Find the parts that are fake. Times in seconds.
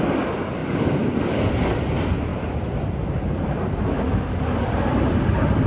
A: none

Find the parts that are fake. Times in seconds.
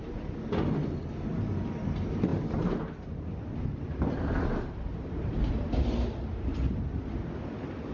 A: none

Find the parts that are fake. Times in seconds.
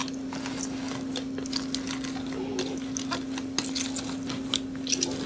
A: none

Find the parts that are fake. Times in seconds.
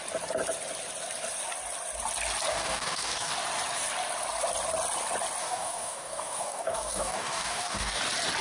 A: 2.5-3.3 (codec, DAC); 5.4-8.0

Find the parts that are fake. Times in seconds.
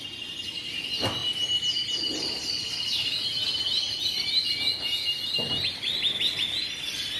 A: none